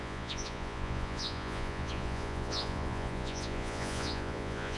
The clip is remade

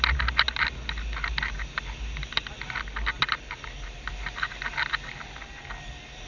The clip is recorded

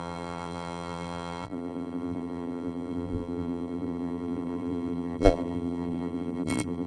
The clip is remade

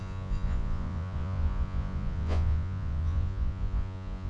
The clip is remade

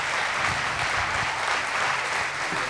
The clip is recorded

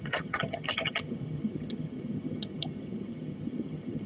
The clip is remade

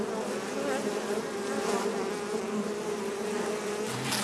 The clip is recorded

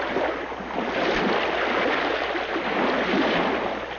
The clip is recorded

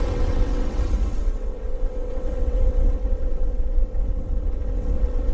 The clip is remade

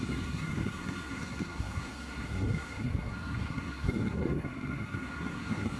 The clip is remade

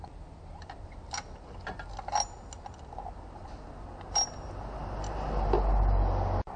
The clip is recorded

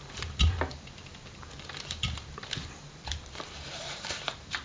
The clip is remade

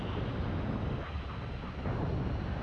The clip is recorded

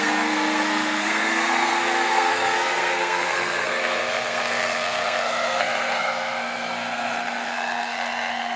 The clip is remade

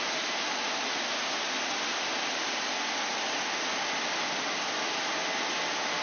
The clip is recorded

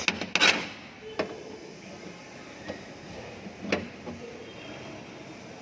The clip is recorded